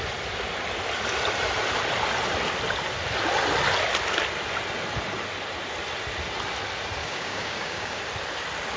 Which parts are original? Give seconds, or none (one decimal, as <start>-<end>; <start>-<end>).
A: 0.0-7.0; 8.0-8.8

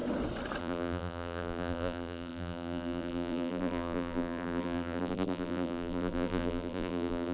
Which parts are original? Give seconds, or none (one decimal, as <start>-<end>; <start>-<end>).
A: 0.0-0.6

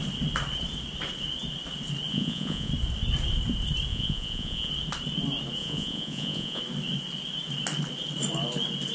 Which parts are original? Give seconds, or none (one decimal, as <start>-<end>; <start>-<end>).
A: 0.0-2.1; 2.7-3.9; 4.7-5.6; 6.6-8.9

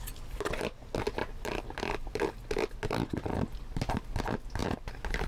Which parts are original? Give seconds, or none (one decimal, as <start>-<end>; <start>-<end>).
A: 0.0-1.2; 4.1-5.3

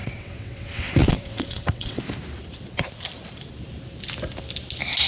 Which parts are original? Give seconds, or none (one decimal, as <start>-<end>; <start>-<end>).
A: 2.0-5.1

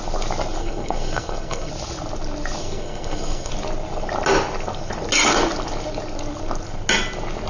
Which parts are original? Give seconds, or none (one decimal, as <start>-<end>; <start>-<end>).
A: 0.0-0.6; 1.7-2.6; 3.5-7.5